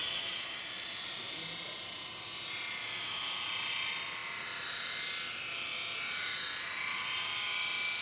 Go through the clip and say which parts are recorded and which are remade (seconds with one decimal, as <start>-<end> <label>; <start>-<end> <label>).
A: 0.0-8.0 recorded